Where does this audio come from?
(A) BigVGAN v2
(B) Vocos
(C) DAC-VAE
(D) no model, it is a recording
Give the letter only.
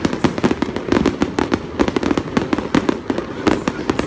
D